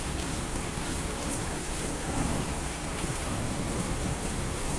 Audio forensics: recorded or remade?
remade